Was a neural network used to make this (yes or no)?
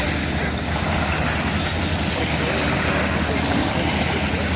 no